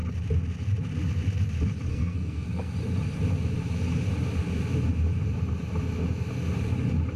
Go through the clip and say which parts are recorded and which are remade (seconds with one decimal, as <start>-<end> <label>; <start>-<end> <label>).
0.0-1.9 recorded; 1.9-2.7 remade; 2.7-7.2 recorded